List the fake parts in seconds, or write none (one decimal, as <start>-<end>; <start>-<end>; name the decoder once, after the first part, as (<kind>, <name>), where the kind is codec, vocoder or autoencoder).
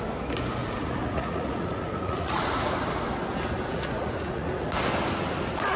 0.6-2.6 (vocoder, Vocos); 3.7-4.5